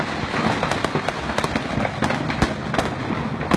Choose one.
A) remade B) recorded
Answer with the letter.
B